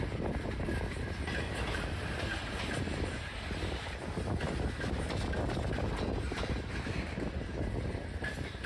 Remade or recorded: recorded